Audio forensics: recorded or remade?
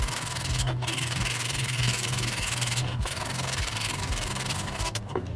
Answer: remade